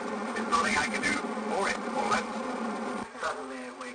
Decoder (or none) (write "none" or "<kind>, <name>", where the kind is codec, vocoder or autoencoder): vocoder, Vocos